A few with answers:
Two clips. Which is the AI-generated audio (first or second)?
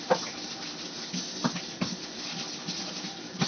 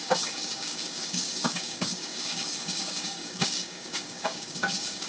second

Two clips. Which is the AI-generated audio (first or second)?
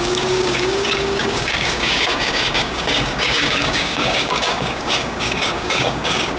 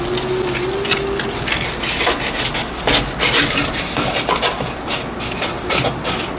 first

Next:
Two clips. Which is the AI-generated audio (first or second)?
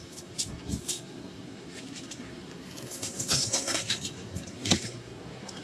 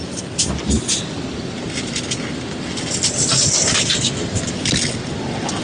first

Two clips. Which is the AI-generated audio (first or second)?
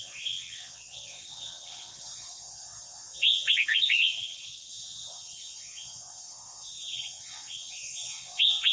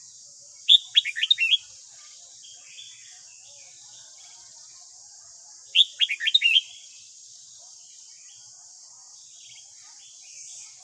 first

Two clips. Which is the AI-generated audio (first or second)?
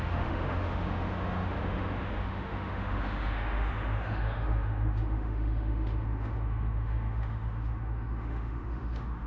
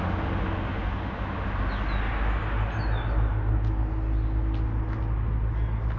first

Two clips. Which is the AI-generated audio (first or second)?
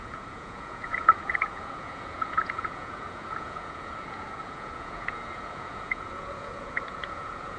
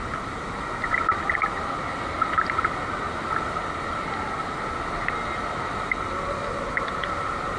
first